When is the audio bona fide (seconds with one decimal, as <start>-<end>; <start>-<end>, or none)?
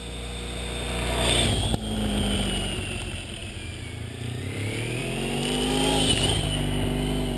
0.0-7.4